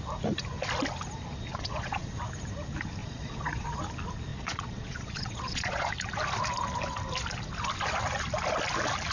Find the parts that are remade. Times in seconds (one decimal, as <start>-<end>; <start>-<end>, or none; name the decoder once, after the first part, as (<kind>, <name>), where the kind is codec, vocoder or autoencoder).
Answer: 1.5-2.2 (vocoder, Vocos); 3.0-3.8; 4.3-5.9